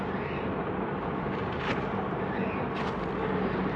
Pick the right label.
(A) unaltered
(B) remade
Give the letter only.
A